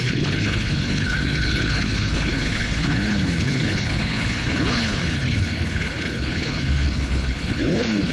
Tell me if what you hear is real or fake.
fake